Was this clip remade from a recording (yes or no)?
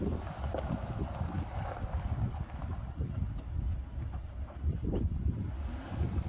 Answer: no